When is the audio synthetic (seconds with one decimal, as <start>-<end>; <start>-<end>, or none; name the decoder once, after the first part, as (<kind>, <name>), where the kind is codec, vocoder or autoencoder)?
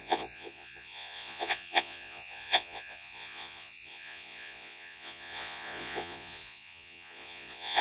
0.0-7.8 (vocoder, Vocos)